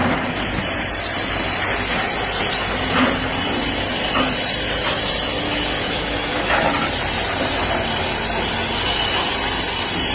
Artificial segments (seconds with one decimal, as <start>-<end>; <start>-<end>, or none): 5.3-6.7